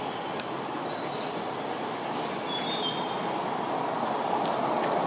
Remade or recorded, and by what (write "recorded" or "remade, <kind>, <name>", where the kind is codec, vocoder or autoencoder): recorded